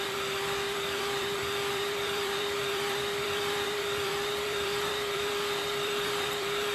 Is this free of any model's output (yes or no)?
no